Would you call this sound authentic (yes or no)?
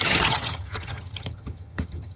no